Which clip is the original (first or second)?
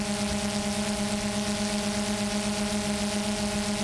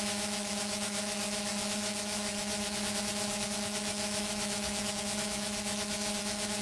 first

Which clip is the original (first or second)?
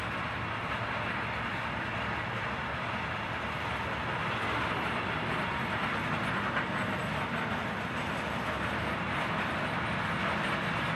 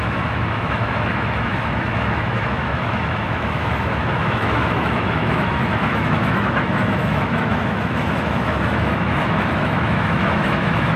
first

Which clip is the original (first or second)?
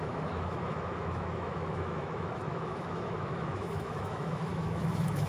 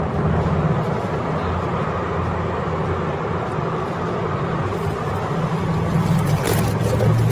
second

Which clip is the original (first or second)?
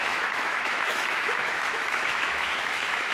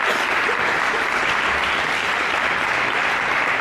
second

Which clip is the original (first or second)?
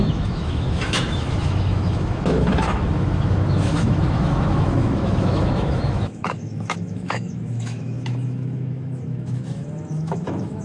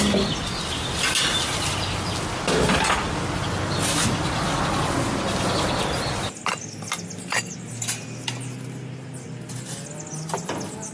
second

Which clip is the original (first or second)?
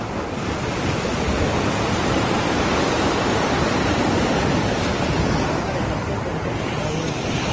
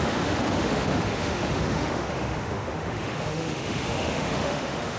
first